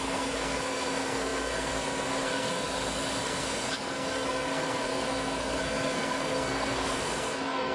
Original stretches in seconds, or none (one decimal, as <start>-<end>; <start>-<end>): none